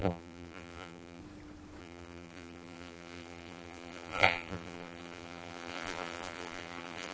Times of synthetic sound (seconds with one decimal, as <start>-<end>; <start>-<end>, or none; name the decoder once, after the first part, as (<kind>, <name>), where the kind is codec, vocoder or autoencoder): 0.0-1.2 (vocoder, BigVGAN v2); 1.8-7.1